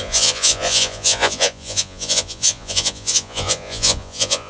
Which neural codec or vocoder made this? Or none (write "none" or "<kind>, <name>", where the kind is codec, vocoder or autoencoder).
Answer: vocoder, Vocos